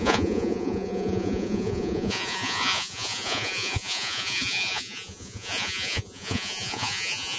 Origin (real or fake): fake